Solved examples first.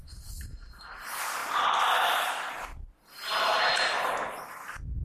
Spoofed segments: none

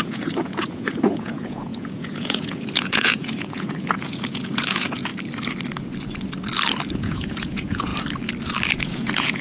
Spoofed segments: 0.0-5.1 (vocoder, Vocos); 6.9-7.9; 8.8-9.4

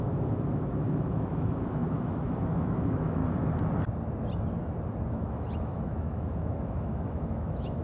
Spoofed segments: 0.0-3.2 (autoencoder, DAC-VAE); 5.1-7.8

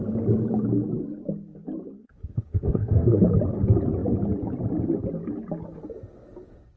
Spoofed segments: 2.0-3.2 (codec, SNAC)

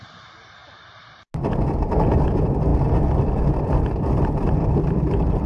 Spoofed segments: none

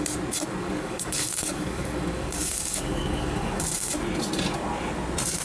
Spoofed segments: 0.6-3.6 (codec, DAC)